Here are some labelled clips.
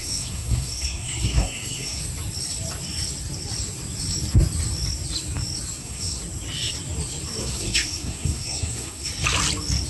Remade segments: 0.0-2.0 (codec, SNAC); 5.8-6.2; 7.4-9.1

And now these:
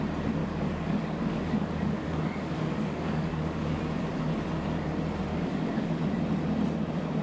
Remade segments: 0.4-3.8 (codec, DAC); 5.3-6.0

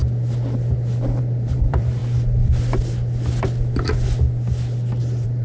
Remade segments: 1.2-2.0 (vocoder, BigVGAN v2); 5.0-5.4

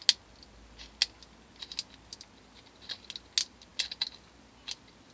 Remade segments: none

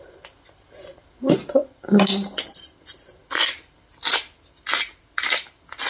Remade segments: none

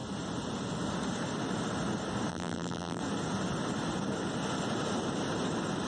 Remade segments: 2.3-3.0 (vocoder, BigVGAN v2)

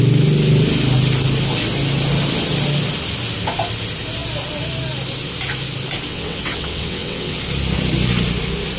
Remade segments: 6.1-7.4 (vocoder, WaveNeXt)

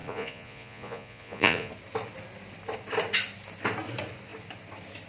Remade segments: 0.0-1.7 (vocoder, Vocos)